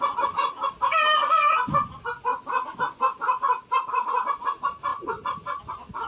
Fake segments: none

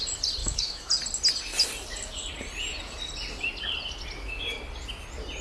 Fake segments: 0.4-0.9

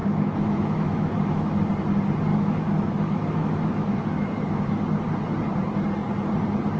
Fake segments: 0.0-1.7; 2.3-4.7

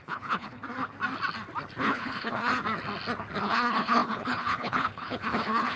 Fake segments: 0.0-0.6; 1.8-2.5; 3.4-5.8

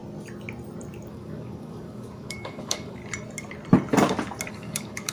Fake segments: 1.1-3.0; 4.5-5.1

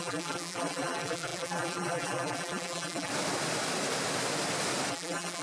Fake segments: 0.0-3.1; 4.9-5.4

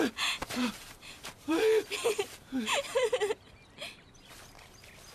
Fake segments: 0.4-3.5